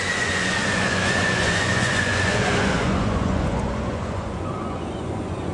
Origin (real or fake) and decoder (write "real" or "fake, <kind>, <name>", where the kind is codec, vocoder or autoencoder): fake, vocoder, Vocos